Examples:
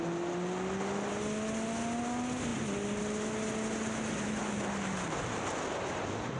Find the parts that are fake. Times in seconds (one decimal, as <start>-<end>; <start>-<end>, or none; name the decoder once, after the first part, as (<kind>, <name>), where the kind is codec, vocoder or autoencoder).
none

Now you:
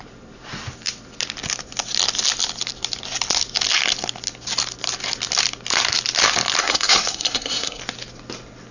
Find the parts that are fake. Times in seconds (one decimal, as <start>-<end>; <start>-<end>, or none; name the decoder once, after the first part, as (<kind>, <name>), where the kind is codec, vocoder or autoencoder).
6.6-7.8 (codec, SNAC)

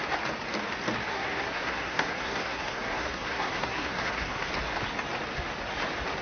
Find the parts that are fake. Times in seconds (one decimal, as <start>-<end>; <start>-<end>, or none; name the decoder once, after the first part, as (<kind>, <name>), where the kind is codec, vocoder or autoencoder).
1.1-4.5 (codec, SNAC)

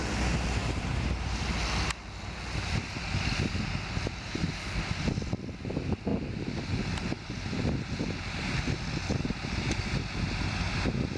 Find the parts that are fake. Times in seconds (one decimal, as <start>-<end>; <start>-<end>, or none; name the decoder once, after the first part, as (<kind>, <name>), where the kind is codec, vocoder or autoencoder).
0.6-1.4 (vocoder, BigVGAN v2); 6.1-6.8